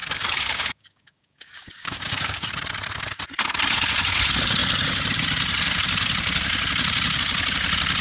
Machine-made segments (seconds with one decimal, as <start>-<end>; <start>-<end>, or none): 0.0-2.5